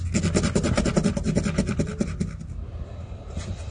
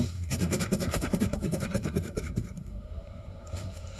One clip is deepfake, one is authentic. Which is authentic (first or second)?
first